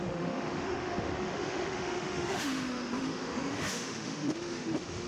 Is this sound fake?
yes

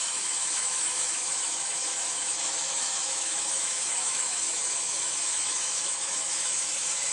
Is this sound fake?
yes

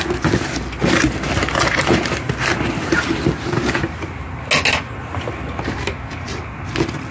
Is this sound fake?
no